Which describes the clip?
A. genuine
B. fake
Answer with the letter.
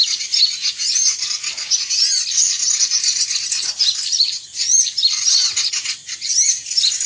A